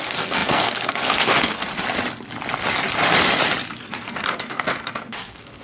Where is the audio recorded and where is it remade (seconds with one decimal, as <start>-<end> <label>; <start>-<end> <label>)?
0.0-1.7 remade; 1.7-3.8 recorded; 3.8-5.6 remade